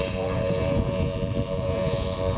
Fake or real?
fake